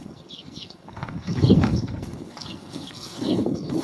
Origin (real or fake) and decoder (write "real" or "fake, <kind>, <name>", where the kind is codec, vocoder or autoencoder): fake, codec, SNAC